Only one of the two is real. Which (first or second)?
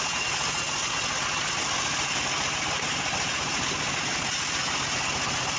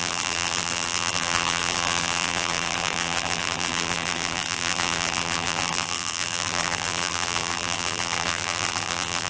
first